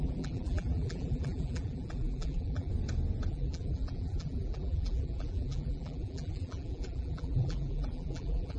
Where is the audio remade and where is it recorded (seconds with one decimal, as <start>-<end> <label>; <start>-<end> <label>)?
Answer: 0.0-2.7 remade; 2.7-3.3 recorded; 3.3-8.6 remade